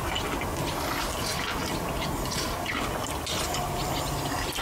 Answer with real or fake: real